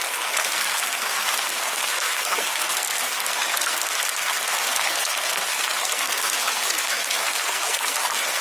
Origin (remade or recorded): remade